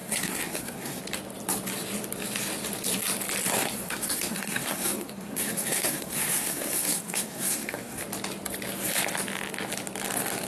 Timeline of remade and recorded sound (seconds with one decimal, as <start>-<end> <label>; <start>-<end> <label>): 0.0-1.0 remade; 1.0-3.5 recorded; 3.5-8.0 remade; 8.0-10.5 recorded